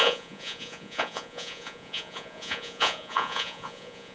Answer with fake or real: fake